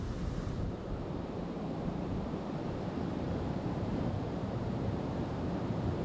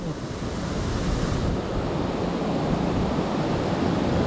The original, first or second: second